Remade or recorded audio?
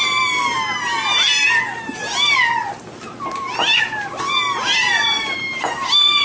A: recorded